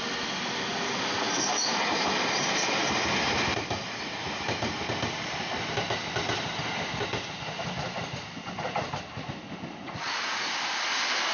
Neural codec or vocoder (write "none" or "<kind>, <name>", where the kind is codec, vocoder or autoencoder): none